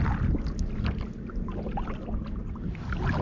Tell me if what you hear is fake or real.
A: real